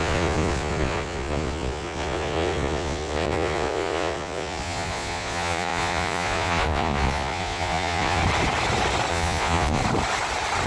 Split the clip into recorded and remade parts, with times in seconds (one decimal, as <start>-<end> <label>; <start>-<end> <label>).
0.0-8.2 remade; 8.2-9.1 recorded; 9.1-9.8 remade; 9.8-10.7 recorded